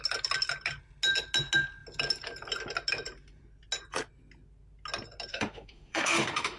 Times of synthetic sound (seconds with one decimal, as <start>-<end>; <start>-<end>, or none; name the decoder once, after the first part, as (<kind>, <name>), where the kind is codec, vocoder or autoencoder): 5.3-6.6 (autoencoder, DAC-VAE)

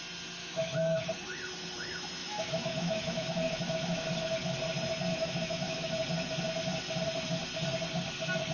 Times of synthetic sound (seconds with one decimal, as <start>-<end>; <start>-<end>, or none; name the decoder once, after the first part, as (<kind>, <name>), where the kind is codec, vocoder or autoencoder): 0.4-1.0 (autoencoder, DAC-VAE); 2.2-4.1; 5.1-5.9